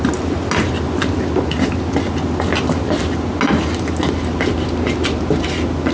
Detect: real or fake real